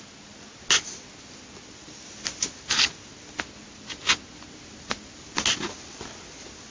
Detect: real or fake real